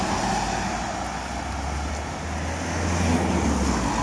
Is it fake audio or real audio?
real